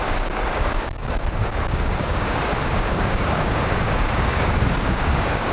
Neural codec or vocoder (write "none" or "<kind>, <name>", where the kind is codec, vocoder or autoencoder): codec, DAC